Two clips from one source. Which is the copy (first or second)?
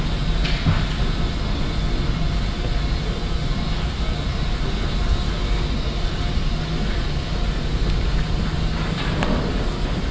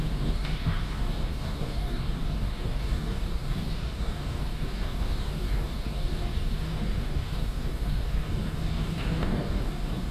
second